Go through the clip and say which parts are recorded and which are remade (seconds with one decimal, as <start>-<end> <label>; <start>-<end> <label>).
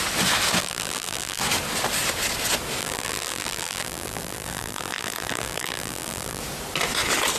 0.0-0.6 recorded; 0.6-1.4 remade; 1.4-2.8 recorded; 2.8-6.4 remade; 6.4-7.4 recorded